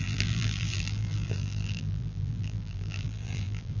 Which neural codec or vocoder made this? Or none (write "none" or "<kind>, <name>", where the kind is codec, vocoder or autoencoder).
vocoder, BigVGAN v2